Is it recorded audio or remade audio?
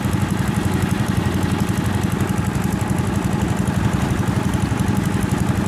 recorded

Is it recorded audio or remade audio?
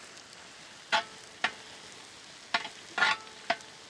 recorded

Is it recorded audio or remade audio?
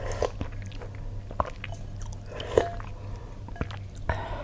recorded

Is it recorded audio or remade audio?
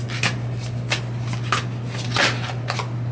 recorded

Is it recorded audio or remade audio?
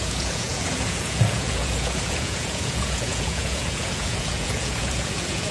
remade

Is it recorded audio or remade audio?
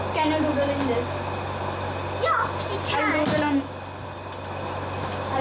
recorded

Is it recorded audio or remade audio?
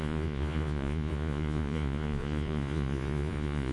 remade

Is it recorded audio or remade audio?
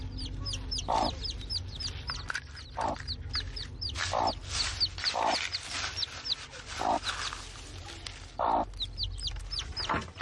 recorded